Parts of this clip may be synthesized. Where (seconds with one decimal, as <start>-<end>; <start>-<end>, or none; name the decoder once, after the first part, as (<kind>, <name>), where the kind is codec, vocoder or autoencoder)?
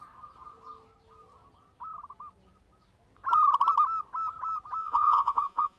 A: 4.8-5.8 (vocoder, Vocos)